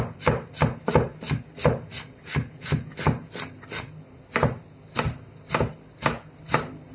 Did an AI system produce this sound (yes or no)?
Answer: no